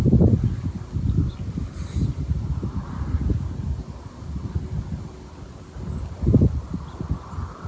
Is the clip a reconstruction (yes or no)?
no